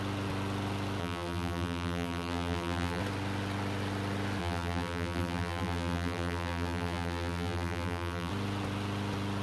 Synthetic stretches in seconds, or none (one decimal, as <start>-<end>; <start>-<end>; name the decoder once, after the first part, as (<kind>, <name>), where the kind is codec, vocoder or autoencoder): 1.0-3.0 (vocoder, BigVGAN v2); 4.4-8.3